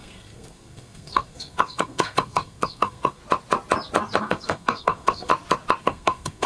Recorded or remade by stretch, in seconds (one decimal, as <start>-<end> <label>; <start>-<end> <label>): 0.0-3.2 remade; 3.2-4.2 recorded; 4.2-5.3 remade; 5.3-5.8 recorded; 5.8-6.5 remade